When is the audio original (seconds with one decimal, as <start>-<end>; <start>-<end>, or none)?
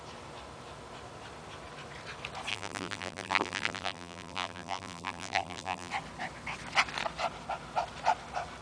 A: 0.0-2.5; 5.9-8.6